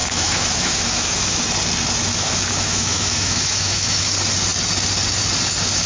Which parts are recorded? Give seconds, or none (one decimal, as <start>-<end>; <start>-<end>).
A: 1.4-2.1; 4.1-5.9